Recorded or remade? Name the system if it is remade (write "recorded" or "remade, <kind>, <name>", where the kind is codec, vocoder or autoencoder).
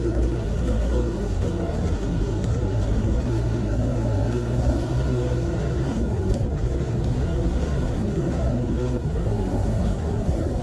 remade, codec, SNAC